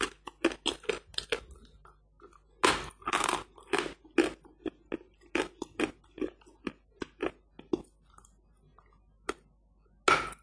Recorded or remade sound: recorded